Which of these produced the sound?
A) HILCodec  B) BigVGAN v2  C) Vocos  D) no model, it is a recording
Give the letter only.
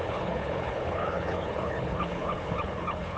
A